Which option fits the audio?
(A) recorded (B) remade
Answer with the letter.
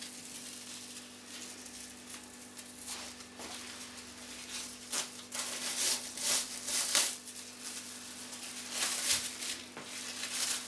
A